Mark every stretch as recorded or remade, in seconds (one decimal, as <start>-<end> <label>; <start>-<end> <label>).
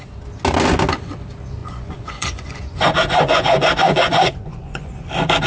0.0-1.6 recorded; 1.6-4.9 remade; 4.9-5.5 recorded